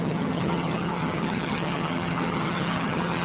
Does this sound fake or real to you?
fake